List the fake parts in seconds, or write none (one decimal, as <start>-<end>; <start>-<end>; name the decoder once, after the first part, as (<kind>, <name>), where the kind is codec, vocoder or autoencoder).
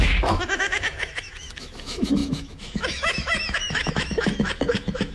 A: 0.0-5.1 (autoencoder, DAC-VAE)